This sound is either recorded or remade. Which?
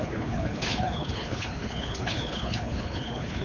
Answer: remade